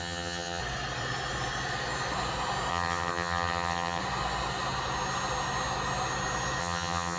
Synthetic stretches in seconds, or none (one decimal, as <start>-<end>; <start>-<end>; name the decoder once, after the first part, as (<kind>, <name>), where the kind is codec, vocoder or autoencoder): 0.0-0.6 (vocoder, HiFi-GAN); 2.7-4.0; 6.6-7.2